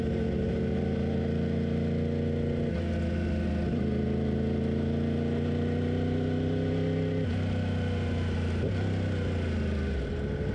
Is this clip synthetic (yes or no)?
no